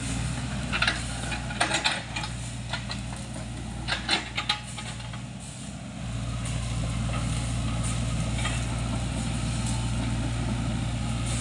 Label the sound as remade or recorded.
recorded